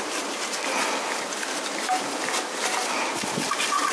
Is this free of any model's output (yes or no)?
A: yes